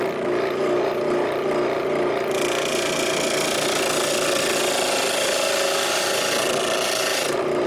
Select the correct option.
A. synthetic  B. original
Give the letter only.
B